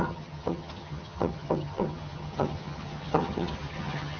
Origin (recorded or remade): remade